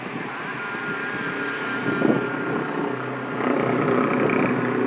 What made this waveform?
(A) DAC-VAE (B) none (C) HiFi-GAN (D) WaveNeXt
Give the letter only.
B